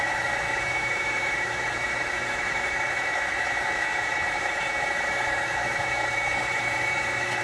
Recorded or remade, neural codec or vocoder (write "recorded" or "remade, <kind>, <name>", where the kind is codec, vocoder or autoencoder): remade, autoencoder, DAC-VAE